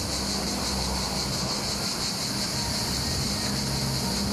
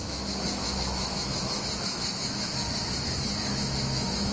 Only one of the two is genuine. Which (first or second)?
first